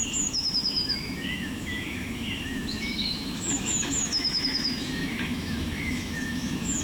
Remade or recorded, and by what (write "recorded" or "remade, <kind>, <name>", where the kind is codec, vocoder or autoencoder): remade, autoencoder, DAC-VAE